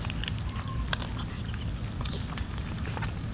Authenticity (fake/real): real